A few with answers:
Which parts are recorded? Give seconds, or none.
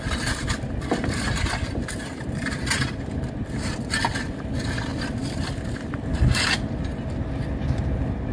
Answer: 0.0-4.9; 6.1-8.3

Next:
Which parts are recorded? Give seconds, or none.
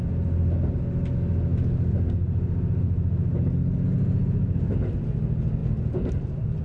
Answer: 0.0-6.6